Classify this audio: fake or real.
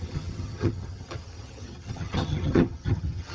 fake